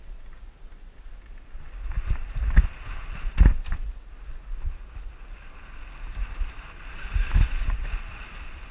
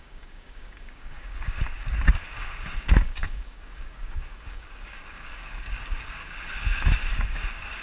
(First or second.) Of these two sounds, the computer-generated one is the second